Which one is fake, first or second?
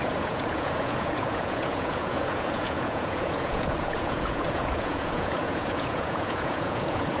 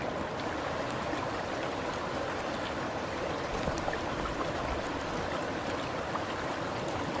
first